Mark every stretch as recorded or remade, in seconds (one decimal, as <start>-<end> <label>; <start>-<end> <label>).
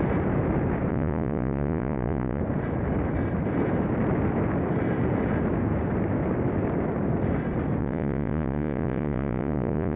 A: 0.0-0.9 recorded; 0.9-2.4 remade; 2.4-7.8 recorded; 7.8-10.0 remade